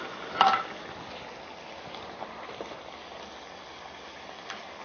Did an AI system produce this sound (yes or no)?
no